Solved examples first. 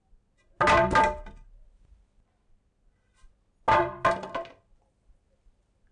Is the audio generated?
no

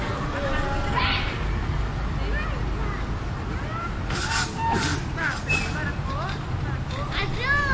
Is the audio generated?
no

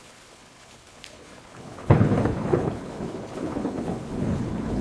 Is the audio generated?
yes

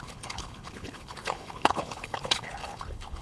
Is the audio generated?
yes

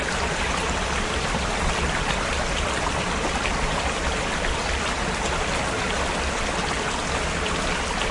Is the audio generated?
no